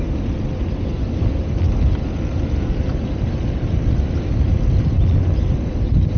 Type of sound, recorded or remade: recorded